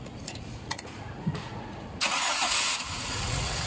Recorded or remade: remade